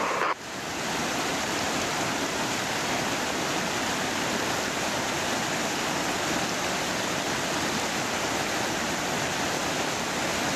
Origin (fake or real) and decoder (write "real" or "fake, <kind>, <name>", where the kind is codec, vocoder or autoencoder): real